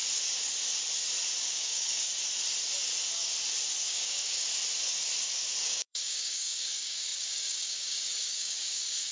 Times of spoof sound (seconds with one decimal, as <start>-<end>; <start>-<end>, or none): 1.4-2.1; 3.8-4.5; 5.6-9.1